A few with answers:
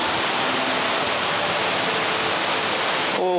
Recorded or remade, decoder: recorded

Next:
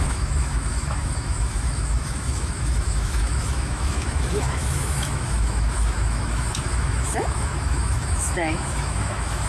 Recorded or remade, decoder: remade, autoencoder, DAC-VAE